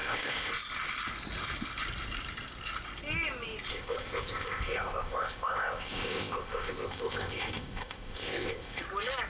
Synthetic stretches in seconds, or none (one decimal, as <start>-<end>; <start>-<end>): 0.0-0.5; 3.7-8.8